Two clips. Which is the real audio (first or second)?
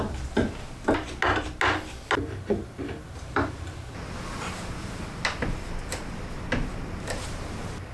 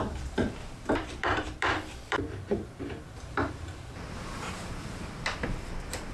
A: first